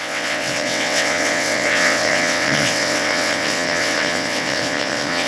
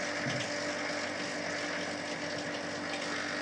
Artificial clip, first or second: first